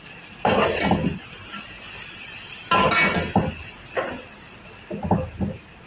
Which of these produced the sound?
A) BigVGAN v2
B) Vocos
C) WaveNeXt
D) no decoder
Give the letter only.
D